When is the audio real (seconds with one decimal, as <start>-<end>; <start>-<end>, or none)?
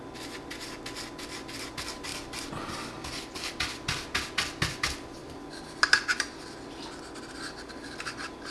0.0-5.2; 5.8-8.5